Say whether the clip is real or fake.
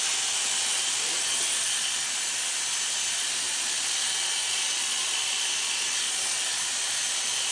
real